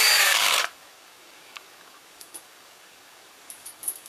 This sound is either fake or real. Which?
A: fake